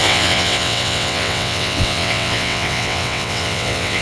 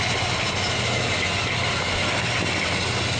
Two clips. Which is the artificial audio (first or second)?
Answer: first